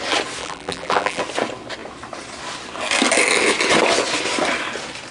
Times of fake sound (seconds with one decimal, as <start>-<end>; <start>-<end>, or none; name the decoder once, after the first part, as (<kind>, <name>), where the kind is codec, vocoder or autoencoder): 0.4-1.2 (vocoder, BigVGAN v2)